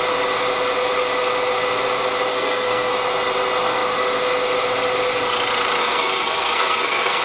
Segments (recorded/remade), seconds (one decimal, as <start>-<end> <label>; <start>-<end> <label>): 0.0-2.3 recorded; 2.3-2.9 remade; 2.9-5.8 recorded; 5.8-7.2 remade